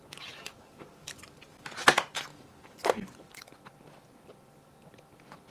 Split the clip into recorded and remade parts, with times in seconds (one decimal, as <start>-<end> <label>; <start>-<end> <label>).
0.0-5.5 recorded